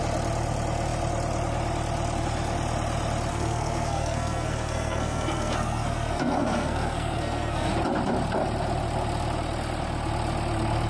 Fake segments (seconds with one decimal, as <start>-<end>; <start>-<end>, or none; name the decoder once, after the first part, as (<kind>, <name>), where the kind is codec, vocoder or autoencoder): 3.3-7.7 (codec, SNAC)